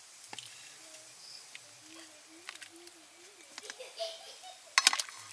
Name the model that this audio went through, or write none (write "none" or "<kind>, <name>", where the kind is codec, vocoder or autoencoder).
none